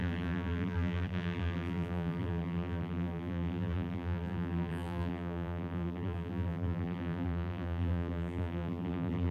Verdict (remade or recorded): remade